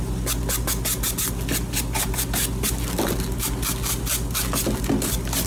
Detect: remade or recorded recorded